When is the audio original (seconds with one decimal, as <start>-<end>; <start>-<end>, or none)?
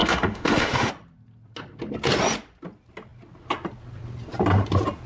0.9-5.1